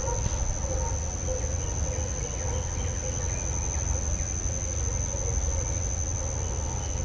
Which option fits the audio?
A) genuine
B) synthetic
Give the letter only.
A